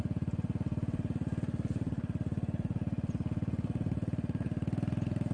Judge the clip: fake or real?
real